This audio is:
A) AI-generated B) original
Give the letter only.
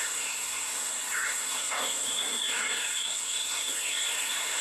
A